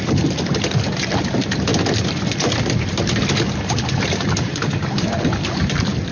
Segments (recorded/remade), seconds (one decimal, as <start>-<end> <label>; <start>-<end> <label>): 0.0-1.7 remade; 1.7-3.7 recorded; 3.7-6.1 remade